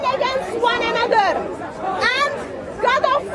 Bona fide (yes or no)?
no